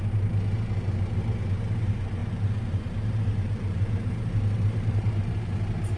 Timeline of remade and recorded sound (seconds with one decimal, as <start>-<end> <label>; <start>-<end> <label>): 0.0-2.2 recorded; 2.2-6.0 remade